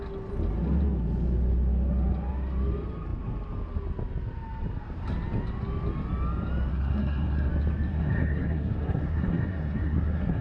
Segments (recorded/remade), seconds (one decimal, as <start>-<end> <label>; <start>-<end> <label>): 0.0-6.7 recorded; 6.7-7.5 remade; 7.5-7.9 recorded; 7.9-10.4 remade